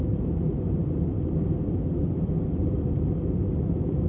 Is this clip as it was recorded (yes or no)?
yes